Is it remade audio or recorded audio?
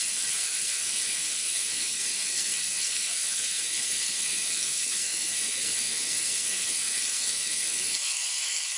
remade